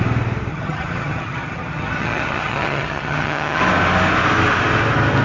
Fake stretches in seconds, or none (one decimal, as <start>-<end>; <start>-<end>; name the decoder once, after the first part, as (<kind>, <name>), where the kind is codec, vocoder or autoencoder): 0.5-3.6 (vocoder, HiFi-GAN)